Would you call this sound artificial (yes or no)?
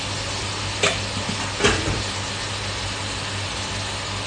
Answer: no